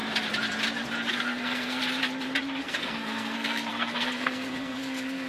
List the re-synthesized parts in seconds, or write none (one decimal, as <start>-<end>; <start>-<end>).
1.1-1.8; 2.6-5.3